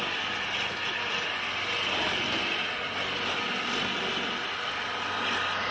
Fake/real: real